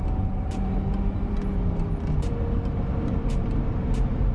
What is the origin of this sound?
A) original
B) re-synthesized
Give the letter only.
A